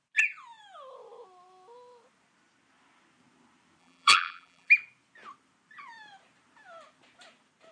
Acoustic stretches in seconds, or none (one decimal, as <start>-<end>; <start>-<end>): 0.0-3.8; 4.7-7.7